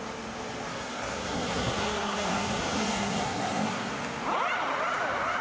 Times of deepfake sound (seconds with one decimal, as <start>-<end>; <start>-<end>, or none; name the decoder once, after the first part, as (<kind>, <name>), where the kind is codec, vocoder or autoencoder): 0.7-3.9 (codec, SNAC)